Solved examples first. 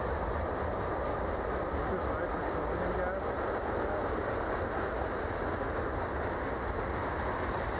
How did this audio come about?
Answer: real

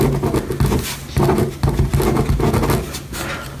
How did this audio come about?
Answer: real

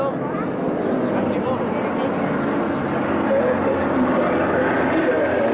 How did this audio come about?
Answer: real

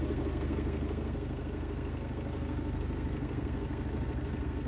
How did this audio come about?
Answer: fake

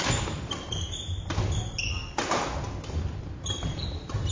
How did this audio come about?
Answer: real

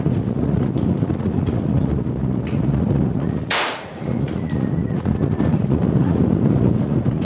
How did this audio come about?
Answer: fake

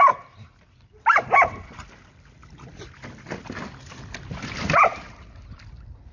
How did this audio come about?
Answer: real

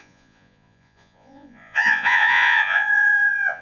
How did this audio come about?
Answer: fake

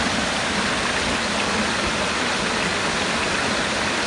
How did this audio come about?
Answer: real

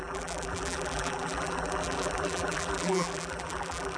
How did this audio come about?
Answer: fake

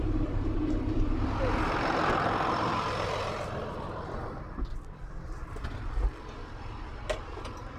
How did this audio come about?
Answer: fake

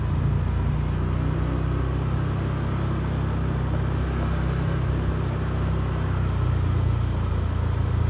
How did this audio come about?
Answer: real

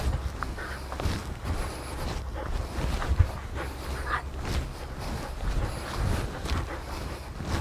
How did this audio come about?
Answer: real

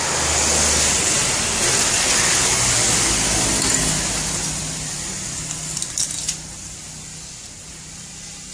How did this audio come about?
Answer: real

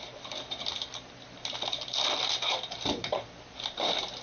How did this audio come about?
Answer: real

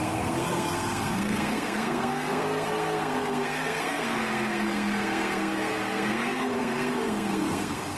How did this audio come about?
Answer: fake